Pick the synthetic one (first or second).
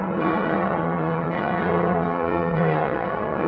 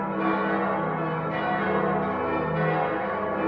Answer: first